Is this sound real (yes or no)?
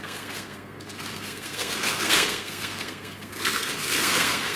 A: no